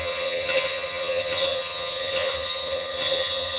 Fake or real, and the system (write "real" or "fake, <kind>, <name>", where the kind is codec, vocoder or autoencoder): fake, vocoder, HiFi-GAN